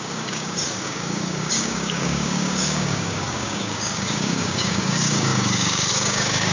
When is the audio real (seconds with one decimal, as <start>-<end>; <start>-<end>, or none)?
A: none